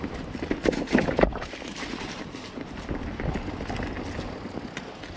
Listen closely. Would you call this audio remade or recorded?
recorded